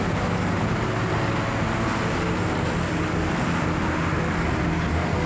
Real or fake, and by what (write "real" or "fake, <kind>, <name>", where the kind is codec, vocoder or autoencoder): real